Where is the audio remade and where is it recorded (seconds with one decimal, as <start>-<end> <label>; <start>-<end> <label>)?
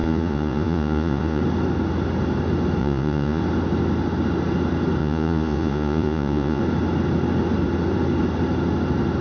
0.0-1.4 remade; 1.4-2.8 recorded; 2.8-3.4 remade; 3.4-5.0 recorded; 5.0-6.6 remade; 6.6-9.2 recorded